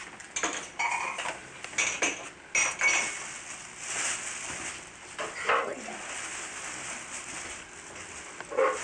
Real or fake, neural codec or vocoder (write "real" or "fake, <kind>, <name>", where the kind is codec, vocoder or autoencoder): real